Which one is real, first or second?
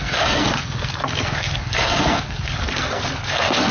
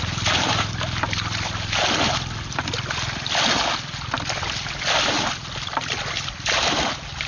second